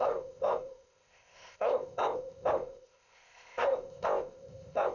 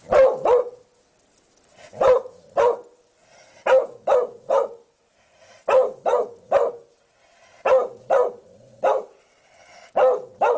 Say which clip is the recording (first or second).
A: second